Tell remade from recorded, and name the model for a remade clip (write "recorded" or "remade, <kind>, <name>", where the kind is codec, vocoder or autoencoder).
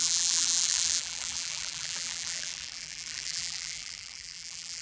remade, vocoder, BigVGAN v2